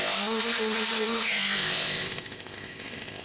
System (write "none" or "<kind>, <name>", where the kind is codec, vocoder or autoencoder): codec, ZipCodec